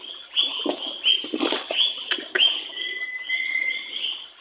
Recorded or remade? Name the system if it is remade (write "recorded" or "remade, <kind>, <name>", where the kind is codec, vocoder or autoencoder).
recorded